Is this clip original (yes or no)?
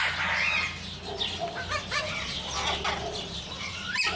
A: yes